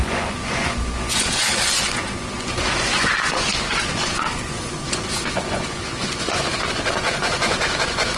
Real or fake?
fake